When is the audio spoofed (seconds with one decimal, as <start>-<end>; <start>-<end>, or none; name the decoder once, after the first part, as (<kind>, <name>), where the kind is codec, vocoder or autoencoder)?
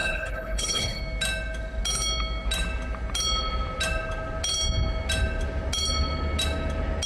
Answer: 0.0-1.0 (codec, HILCodec)